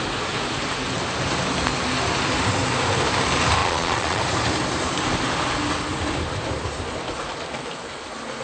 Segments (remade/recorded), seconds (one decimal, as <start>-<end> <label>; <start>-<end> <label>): 0.0-3.6 recorded; 3.6-4.2 remade; 4.2-8.4 recorded